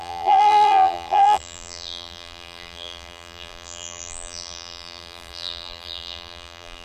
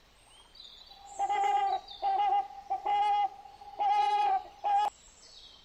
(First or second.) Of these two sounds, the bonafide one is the second